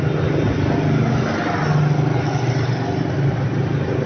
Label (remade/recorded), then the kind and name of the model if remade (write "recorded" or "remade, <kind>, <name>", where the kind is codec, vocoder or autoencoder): recorded